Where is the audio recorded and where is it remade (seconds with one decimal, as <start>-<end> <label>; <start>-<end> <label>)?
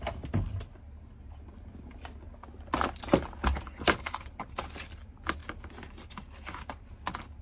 0.0-7.4 recorded